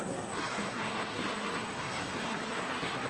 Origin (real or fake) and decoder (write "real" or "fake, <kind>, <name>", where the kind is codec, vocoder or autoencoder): fake, codec, SNAC